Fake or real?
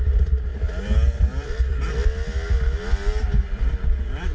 real